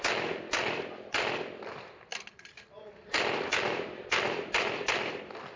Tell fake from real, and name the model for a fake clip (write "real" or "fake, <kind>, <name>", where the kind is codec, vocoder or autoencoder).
real